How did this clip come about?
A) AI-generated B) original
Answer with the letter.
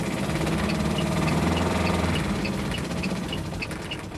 A